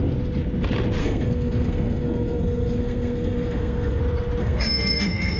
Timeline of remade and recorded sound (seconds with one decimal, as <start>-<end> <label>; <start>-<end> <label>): 0.0-1.0 recorded; 1.0-4.0 remade; 4.0-4.4 recorded; 4.4-5.4 remade